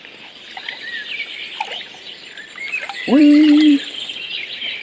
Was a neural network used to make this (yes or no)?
yes